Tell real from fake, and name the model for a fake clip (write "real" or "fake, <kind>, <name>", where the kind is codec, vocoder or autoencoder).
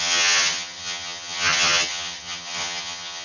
fake, vocoder, HiFi-GAN